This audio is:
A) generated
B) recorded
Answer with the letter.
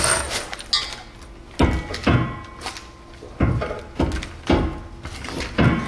B